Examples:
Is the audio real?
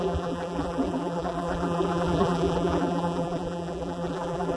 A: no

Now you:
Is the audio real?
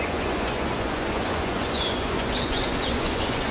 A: no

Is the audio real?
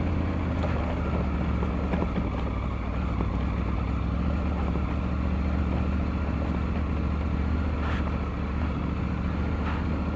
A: yes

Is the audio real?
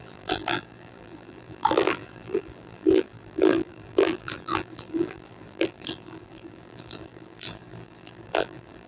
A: no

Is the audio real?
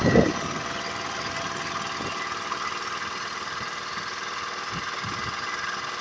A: yes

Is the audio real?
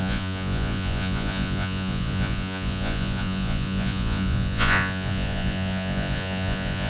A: no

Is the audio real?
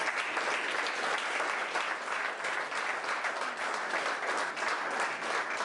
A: yes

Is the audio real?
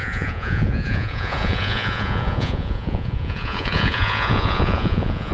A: no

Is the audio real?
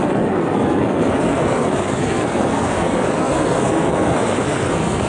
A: no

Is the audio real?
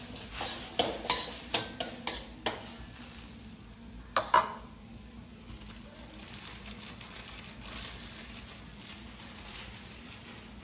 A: yes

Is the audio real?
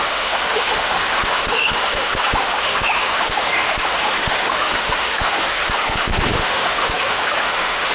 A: no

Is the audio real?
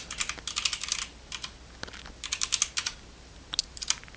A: yes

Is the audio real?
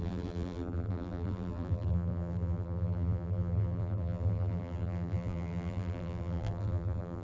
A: no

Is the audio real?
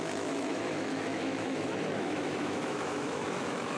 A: no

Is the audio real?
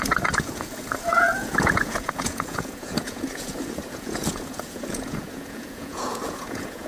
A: no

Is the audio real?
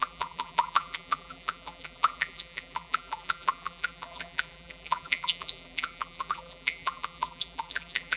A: no